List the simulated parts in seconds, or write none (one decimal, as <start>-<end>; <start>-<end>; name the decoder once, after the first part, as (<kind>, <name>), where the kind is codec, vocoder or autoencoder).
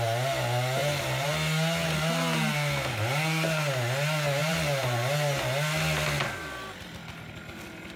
0.8-1.3 (vocoder, BigVGAN v2); 4.4-5.4